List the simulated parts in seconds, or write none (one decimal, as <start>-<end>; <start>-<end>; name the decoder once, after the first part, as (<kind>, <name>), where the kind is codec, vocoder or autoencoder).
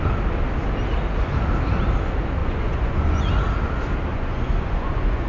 2.4-3.2 (vocoder, Vocos); 4.1-5.3